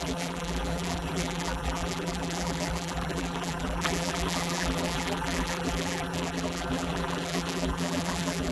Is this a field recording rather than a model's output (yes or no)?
no